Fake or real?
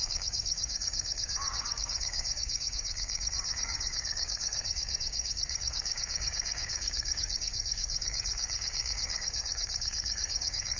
fake